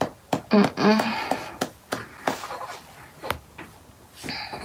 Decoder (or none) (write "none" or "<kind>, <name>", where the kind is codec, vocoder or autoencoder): none